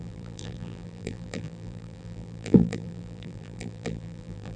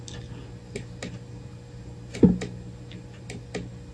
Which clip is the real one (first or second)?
second